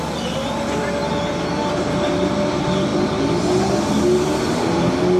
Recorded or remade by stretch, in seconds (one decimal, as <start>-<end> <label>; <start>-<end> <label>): 0.0-5.2 recorded